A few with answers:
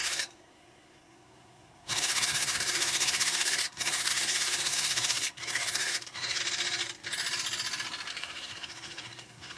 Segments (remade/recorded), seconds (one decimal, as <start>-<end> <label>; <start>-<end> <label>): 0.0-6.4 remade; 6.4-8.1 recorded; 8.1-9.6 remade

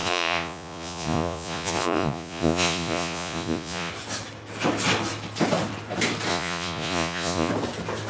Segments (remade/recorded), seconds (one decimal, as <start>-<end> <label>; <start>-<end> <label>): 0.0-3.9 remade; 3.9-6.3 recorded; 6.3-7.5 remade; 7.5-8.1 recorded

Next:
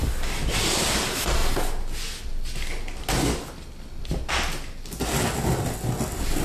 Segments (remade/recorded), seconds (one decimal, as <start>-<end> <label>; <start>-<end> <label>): 0.0-6.4 recorded

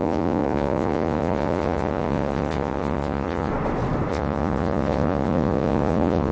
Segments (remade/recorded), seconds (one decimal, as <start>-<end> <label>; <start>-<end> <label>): 0.0-3.5 remade; 3.5-4.1 recorded; 4.1-6.3 remade